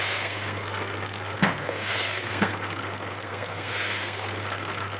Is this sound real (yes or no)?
no